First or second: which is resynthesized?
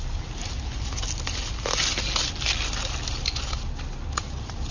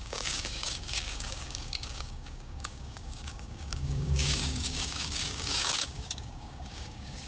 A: second